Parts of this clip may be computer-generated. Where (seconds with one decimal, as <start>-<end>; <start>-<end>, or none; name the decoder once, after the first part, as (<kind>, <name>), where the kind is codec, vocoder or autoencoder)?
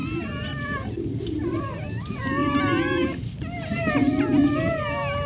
none